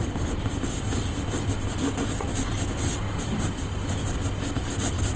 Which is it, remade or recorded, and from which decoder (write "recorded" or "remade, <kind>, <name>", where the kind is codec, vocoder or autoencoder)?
recorded